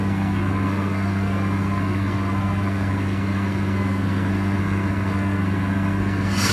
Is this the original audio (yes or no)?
no